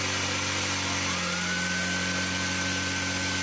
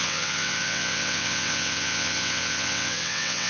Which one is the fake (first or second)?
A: second